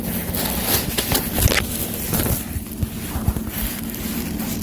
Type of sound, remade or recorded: recorded